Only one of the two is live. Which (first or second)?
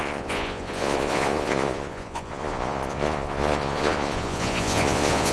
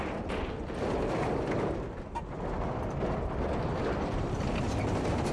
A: second